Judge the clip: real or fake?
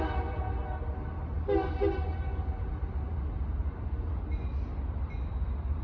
real